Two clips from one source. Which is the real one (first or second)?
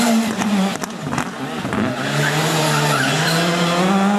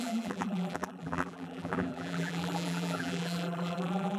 first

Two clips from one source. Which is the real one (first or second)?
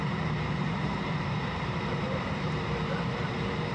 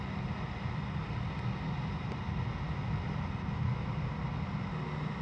second